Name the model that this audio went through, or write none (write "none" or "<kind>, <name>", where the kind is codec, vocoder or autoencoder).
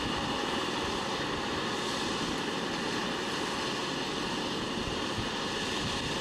none